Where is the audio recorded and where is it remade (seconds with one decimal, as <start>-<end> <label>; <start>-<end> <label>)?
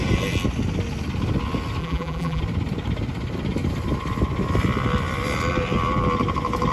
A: 0.0-1.8 recorded; 1.8-2.4 remade; 2.4-6.7 recorded